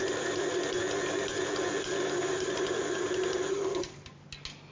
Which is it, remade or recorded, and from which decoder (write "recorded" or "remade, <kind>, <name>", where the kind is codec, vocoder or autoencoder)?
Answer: recorded